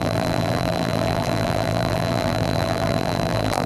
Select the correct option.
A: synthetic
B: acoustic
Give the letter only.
A